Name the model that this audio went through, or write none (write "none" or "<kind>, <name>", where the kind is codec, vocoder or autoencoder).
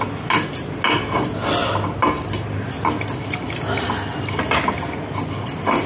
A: none